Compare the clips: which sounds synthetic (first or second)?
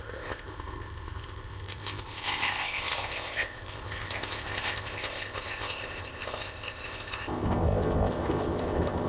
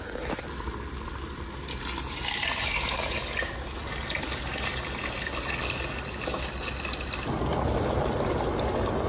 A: first